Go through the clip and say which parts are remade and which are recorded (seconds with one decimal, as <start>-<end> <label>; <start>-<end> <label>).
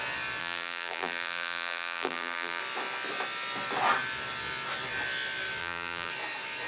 0.0-0.4 recorded; 0.4-2.6 remade; 2.6-5.6 recorded; 5.6-6.1 remade; 6.1-6.7 recorded